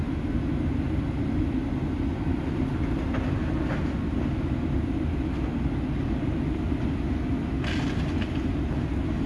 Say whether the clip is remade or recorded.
recorded